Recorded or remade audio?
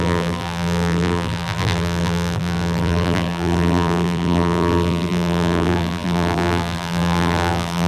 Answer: remade